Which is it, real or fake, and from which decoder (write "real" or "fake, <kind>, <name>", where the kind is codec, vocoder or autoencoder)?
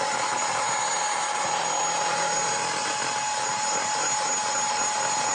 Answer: real